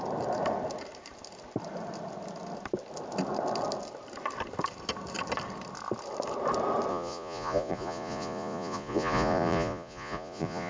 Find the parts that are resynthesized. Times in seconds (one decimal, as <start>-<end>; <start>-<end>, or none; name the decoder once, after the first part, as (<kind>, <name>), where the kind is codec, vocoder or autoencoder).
6.9-10.7 (vocoder, Vocos)